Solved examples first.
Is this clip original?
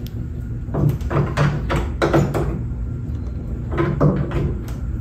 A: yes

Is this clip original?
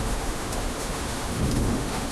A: no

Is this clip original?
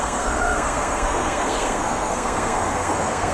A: no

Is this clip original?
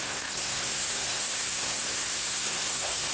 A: no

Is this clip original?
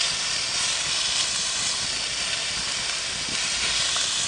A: yes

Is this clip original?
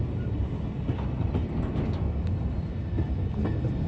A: yes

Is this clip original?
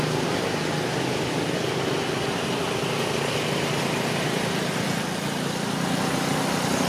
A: yes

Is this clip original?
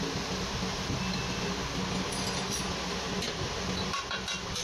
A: yes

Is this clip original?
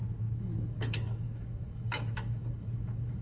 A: no